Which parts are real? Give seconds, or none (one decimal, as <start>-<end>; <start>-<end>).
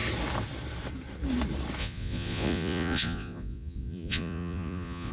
0.0-1.8